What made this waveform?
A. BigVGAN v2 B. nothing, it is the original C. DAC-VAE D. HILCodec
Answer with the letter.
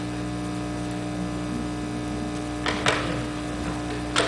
B